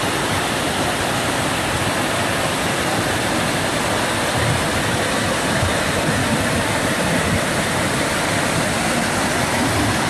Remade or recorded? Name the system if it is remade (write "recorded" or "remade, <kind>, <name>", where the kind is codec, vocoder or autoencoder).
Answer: recorded